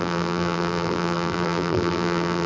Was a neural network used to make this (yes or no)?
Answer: yes